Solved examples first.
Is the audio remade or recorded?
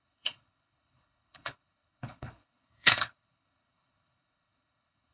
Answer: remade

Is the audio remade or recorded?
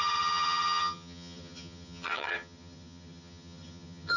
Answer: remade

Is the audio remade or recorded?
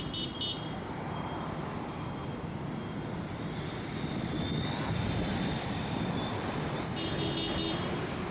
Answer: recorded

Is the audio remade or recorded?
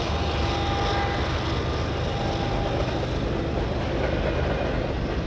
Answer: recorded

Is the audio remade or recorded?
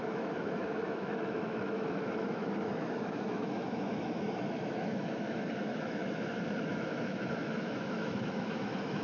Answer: remade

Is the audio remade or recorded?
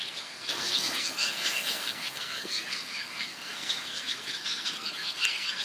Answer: remade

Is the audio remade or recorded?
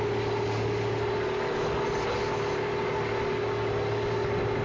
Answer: recorded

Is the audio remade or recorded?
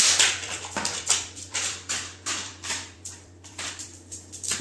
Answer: remade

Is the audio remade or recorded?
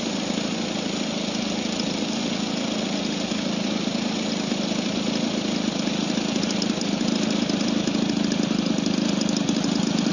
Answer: recorded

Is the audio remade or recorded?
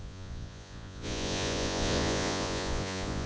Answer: remade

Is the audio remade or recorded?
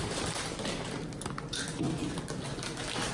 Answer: recorded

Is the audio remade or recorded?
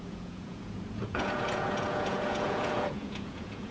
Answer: remade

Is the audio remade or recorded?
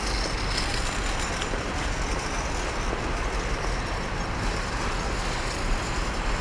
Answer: recorded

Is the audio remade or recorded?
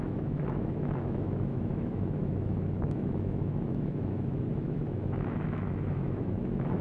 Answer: remade